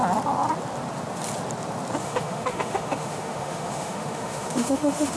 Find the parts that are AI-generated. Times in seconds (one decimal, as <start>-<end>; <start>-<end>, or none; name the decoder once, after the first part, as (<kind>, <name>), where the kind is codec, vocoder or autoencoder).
2.0-5.2 (autoencoder, DAC-VAE)